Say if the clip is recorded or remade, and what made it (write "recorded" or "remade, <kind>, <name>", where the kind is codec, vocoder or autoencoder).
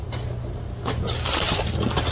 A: recorded